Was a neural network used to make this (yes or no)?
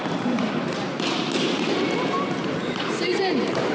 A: yes